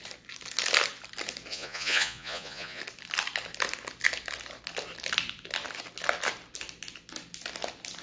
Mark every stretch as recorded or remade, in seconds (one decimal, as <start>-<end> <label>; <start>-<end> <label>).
0.0-1.5 recorded; 1.5-2.8 remade; 2.8-8.0 recorded